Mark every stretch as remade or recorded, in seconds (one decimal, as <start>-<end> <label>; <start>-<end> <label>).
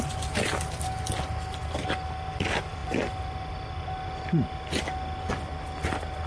0.0-6.3 recorded